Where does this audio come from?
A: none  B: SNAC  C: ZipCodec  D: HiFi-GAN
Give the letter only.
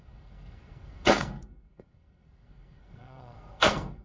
B